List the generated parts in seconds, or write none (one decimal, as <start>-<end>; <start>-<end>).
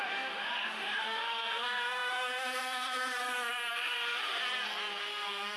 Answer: 0.0-3.2; 3.7-4.4; 5.0-5.6